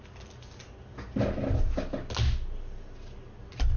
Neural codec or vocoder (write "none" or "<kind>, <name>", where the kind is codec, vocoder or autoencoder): none